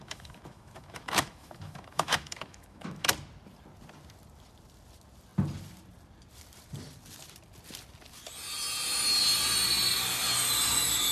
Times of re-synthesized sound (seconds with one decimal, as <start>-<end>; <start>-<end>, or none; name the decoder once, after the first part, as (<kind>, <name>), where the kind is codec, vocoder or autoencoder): 0.0-3.1 (autoencoder, DAC-VAE)